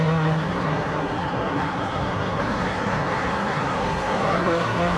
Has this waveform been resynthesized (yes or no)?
yes